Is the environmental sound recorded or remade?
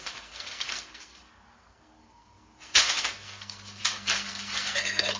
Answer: remade